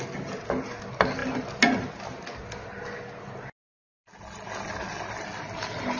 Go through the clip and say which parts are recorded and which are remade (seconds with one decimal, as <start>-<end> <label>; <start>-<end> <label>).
0.0-6.0 recorded